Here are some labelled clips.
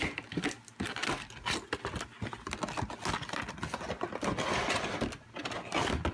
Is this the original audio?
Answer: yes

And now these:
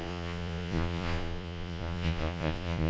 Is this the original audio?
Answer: no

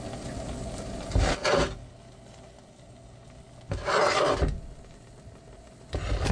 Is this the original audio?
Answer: yes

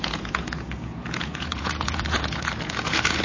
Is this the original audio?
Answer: no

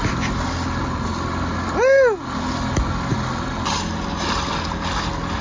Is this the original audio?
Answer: yes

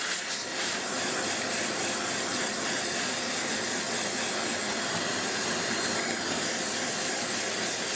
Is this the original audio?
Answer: yes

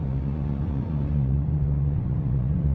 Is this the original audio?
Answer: no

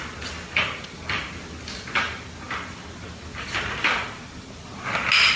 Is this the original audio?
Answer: yes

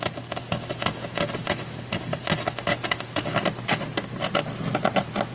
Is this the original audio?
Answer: yes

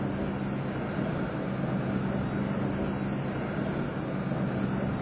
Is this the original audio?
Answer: yes